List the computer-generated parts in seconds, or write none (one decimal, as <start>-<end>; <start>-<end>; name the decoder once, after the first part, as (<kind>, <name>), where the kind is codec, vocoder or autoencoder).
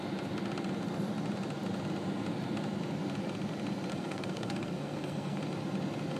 3.9-5.4 (codec, SNAC)